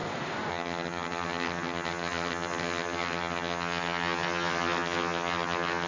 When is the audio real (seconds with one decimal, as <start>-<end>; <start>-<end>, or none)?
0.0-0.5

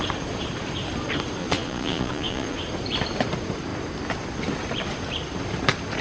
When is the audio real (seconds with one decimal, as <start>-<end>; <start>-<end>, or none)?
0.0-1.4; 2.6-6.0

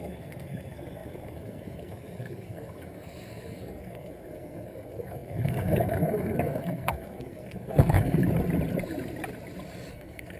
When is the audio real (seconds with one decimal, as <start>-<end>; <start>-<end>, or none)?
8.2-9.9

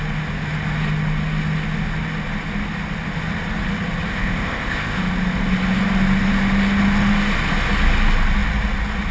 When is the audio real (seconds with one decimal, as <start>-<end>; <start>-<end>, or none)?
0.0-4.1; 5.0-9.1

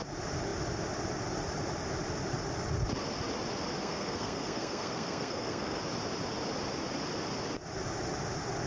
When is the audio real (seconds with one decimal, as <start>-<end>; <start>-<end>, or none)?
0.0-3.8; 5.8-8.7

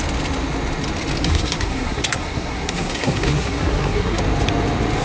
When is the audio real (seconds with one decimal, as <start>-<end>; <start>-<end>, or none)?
0.0-1.2; 4.2-5.0